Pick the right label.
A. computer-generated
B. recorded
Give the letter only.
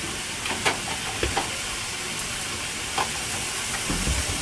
B